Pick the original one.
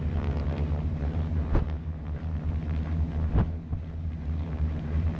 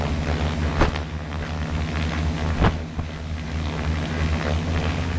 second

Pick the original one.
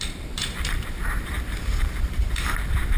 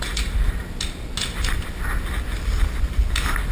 second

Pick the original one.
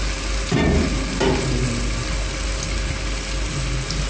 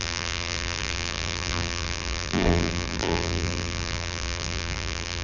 first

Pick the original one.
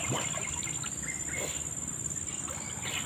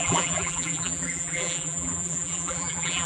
first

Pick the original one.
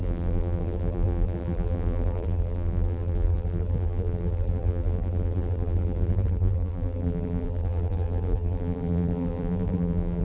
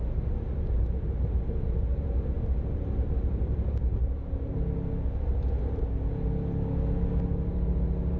second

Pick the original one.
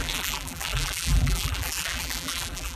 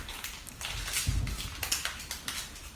second